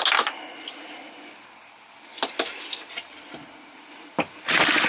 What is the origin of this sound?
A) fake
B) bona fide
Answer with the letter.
B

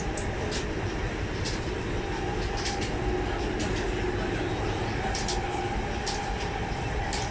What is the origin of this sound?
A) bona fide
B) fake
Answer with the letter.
A